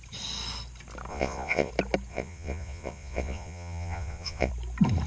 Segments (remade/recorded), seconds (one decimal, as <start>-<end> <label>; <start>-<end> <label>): 0.0-1.1 recorded; 1.1-1.7 remade; 1.7-2.1 recorded; 2.1-4.5 remade; 4.5-5.1 recorded